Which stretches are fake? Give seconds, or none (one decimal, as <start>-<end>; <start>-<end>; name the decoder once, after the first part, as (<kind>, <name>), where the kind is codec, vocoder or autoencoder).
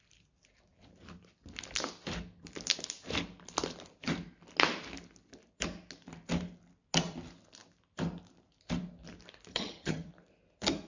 9.5-10.1 (vocoder, HiFi-GAN)